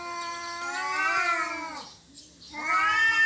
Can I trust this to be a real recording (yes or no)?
yes